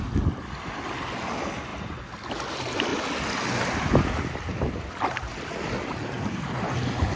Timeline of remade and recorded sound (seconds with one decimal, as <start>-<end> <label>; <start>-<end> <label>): 0.0-7.2 recorded